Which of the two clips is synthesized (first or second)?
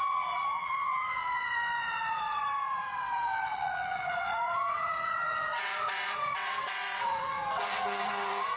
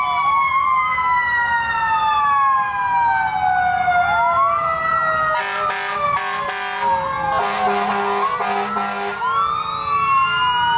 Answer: first